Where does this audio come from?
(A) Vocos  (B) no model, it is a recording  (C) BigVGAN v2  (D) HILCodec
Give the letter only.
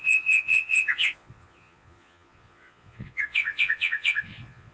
A